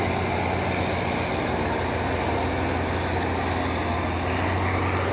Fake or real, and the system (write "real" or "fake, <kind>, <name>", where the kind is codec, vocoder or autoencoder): real